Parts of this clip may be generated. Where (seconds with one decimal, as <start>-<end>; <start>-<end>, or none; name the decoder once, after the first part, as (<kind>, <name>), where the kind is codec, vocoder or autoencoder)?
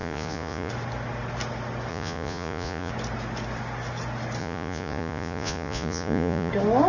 0.0-0.7 (vocoder, Vocos); 1.9-2.9; 4.4-6.5